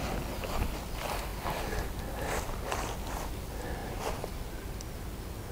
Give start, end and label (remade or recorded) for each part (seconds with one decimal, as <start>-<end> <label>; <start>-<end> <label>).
0.0-5.5 recorded

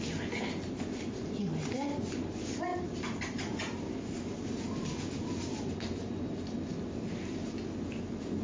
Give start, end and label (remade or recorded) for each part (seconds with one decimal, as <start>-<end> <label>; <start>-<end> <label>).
0.0-8.4 recorded

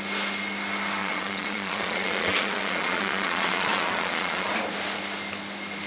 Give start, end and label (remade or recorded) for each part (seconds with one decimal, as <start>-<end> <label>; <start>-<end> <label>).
0.0-1.0 recorded; 1.0-4.5 remade; 4.5-5.9 recorded

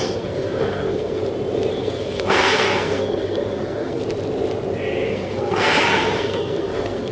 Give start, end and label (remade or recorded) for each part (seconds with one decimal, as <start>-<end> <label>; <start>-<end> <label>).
0.0-1.2 remade; 1.2-1.7 recorded; 1.7-4.0 remade; 4.0-5.1 recorded; 5.1-7.1 remade